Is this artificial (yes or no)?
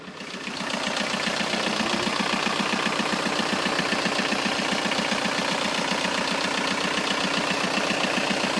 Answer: yes